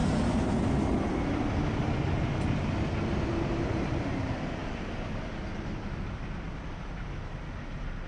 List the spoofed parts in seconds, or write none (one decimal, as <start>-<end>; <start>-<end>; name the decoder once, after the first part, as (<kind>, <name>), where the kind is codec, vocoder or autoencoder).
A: none